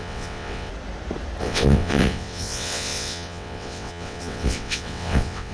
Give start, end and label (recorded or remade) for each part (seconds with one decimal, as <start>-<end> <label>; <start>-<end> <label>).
0.0-0.7 remade; 0.7-1.4 recorded; 1.4-5.5 remade

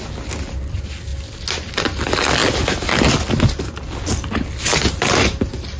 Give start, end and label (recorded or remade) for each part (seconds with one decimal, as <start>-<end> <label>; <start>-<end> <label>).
0.0-5.8 recorded

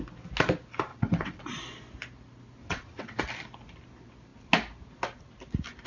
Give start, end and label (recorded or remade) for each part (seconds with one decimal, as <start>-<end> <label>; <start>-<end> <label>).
0.0-0.9 recorded; 0.9-1.4 remade; 1.4-2.6 recorded; 2.6-3.2 remade; 3.2-5.9 recorded

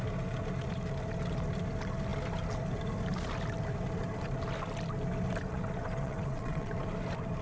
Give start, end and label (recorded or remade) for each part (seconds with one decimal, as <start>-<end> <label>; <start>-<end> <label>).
0.0-5.5 recorded; 5.5-6.7 remade; 6.7-7.4 recorded